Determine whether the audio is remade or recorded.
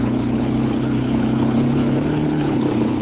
remade